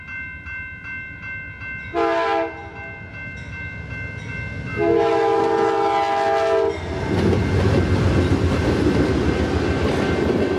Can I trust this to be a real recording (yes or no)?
yes